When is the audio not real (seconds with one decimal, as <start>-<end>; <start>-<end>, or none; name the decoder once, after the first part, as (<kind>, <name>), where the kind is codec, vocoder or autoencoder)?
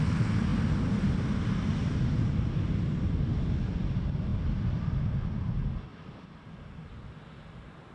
4.3-5.5 (vocoder, BigVGAN v2); 5.9-6.9